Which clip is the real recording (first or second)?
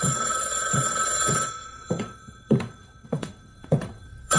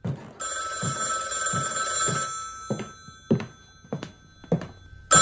second